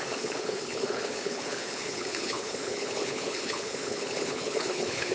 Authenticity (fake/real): fake